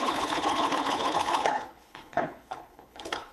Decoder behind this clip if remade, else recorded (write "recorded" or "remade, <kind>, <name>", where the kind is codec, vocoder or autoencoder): remade, codec, HILCodec